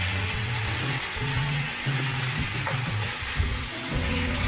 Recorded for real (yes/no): no